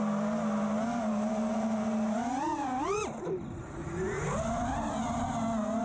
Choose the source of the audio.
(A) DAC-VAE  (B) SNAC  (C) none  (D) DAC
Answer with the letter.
C